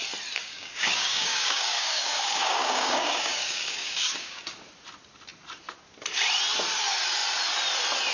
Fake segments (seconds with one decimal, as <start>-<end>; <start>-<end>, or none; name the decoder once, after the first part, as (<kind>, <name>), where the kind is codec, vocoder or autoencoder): 0.4-4.4 (codec, DAC)